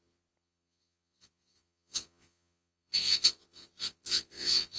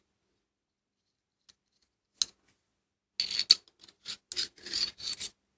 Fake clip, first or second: first